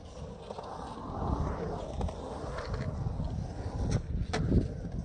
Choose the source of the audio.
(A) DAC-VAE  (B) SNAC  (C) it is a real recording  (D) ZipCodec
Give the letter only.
C